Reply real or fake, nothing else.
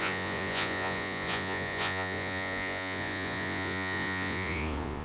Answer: fake